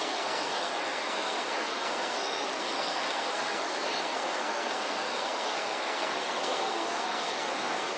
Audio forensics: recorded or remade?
remade